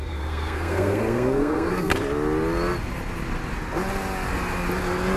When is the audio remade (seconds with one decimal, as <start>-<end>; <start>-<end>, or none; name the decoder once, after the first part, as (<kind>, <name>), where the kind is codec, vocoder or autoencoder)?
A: 0.0-1.9 (codec, SNAC)